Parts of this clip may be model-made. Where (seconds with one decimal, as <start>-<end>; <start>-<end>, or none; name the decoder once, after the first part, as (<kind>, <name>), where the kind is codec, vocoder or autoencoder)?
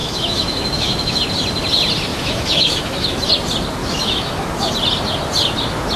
0.0-1.2 (autoencoder, DAC-VAE); 2.1-3.3; 3.8-4.7